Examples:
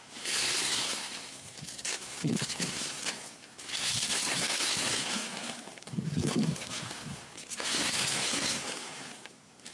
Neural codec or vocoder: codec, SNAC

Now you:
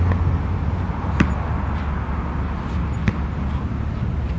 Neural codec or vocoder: none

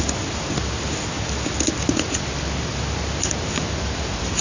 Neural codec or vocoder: none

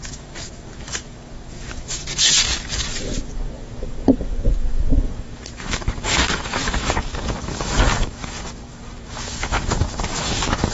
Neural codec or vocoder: codec, DAC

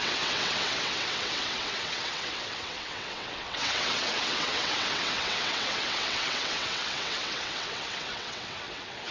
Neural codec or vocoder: vocoder, WaveNeXt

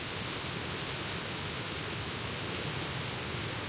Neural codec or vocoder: none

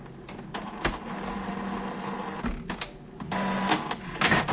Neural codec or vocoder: none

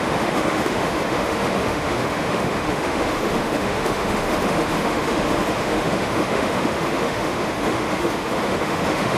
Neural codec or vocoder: autoencoder, DAC-VAE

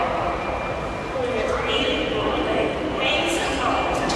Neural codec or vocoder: none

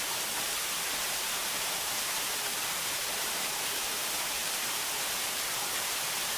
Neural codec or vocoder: vocoder, BigVGAN v2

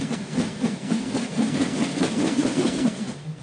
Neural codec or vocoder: codec, SNAC